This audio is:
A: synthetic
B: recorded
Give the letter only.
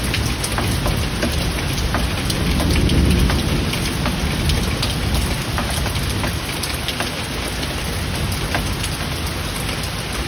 B